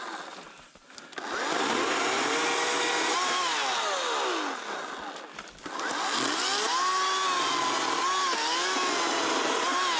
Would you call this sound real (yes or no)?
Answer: yes